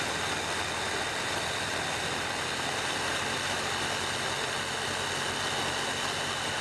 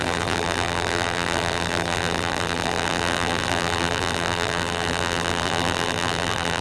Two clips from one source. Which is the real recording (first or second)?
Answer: first